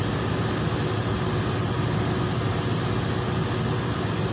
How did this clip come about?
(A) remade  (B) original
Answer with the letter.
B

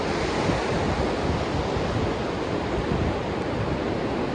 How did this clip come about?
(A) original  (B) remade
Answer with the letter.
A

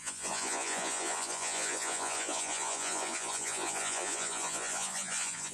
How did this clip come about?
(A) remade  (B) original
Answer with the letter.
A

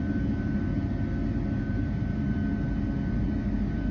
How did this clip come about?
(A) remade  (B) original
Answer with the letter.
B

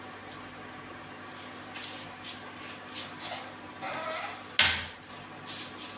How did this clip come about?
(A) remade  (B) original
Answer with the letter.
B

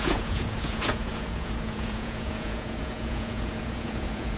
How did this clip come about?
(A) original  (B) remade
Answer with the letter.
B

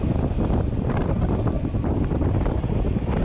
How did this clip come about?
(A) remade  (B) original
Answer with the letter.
B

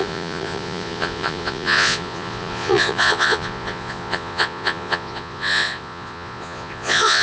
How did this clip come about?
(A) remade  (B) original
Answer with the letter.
A